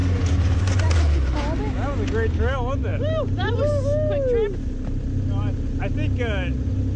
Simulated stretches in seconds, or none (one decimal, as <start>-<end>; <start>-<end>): 2.9-3.7